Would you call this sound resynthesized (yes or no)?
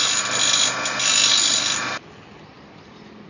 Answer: no